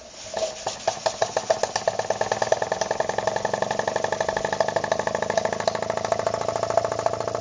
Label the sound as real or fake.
real